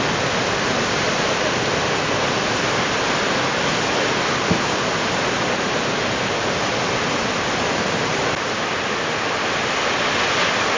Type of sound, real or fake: real